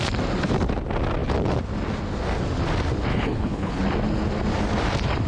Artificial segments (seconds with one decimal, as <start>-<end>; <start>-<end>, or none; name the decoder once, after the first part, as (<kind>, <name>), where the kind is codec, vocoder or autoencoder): 3.1-3.8 (codec, HILCodec)